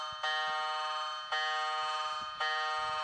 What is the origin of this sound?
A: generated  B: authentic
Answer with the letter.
B